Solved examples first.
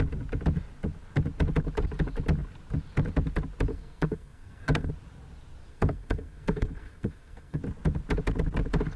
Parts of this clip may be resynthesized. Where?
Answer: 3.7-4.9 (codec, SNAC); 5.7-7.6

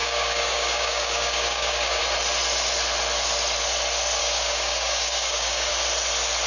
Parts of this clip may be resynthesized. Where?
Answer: 0.0-2.0 (codec, DAC); 4.2-5.7

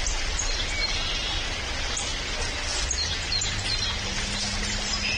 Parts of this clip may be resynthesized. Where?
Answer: none

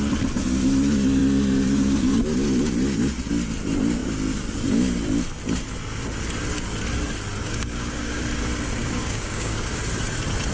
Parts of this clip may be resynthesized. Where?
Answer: 7.4-8.2 (codec, DAC); 8.8-9.8